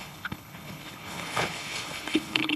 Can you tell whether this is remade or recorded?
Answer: remade